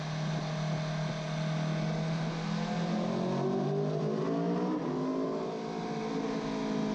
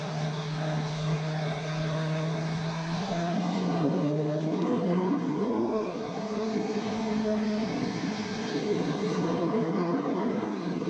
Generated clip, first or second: second